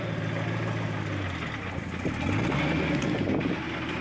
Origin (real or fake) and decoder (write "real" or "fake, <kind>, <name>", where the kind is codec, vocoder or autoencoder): real